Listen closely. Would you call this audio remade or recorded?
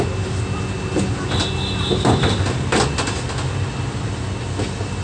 recorded